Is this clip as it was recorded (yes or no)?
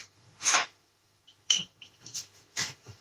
no